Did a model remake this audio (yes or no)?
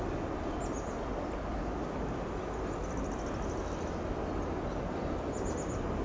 no